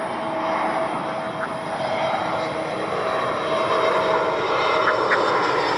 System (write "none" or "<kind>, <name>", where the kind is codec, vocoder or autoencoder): none